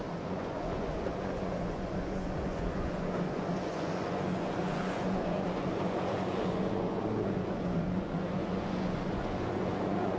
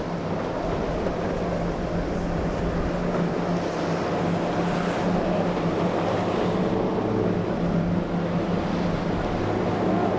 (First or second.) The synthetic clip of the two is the first